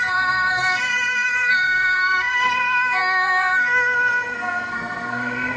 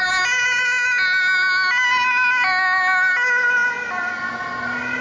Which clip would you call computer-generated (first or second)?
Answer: first